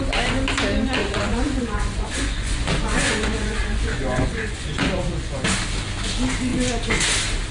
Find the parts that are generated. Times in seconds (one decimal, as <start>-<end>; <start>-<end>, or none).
1.0-5.4